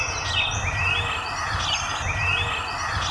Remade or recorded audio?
recorded